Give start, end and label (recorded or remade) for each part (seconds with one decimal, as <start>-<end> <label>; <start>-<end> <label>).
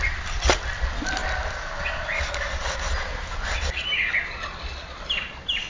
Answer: 0.0-5.7 recorded